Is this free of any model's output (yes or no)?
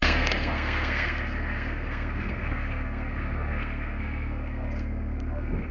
no